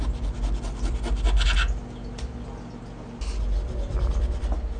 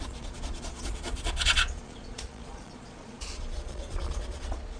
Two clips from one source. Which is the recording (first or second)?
first